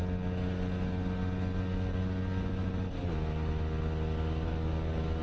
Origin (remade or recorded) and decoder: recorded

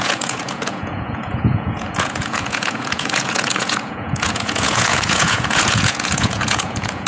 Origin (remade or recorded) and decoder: remade, vocoder, Vocos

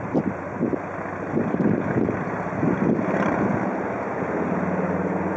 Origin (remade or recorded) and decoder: recorded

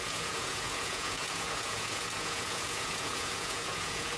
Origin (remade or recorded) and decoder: remade, vocoder, Vocos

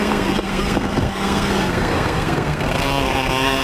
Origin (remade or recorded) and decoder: remade, codec, SNAC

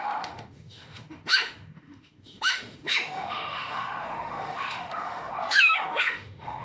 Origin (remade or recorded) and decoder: remade, autoencoder, DAC-VAE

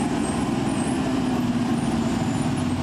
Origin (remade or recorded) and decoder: recorded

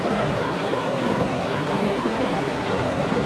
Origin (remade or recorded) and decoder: remade, codec, SNAC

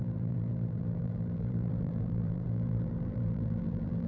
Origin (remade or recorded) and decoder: remade, vocoder, BigVGAN v2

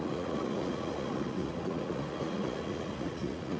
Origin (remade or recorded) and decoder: remade, vocoder, Vocos